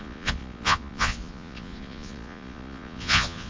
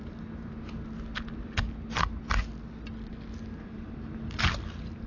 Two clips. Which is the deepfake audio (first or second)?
first